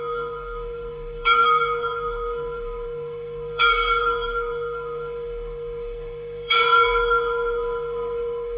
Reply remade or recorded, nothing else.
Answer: remade